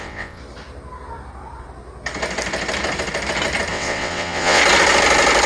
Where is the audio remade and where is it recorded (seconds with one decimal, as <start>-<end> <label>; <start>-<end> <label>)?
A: 0.0-0.4 remade; 0.4-3.7 recorded; 3.7-4.6 remade; 4.6-5.5 recorded